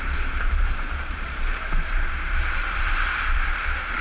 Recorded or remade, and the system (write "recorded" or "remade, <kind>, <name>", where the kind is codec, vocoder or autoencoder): remade, vocoder, BigVGAN v2